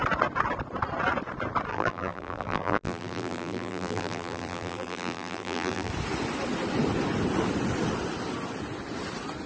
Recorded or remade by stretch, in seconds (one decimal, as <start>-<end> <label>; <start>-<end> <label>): 0.0-1.7 recorded; 1.7-5.9 remade; 5.9-9.5 recorded